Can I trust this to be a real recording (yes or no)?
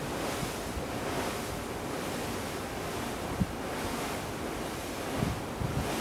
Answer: yes